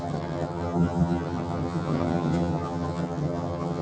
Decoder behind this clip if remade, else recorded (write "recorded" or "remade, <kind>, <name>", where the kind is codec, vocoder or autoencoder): remade, vocoder, HiFi-GAN